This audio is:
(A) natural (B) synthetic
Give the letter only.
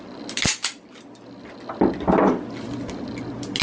A